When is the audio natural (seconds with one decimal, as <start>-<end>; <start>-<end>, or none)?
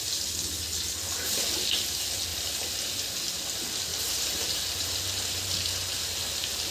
0.0-3.9; 6.3-6.7